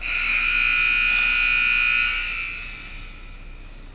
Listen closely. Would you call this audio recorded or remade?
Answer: recorded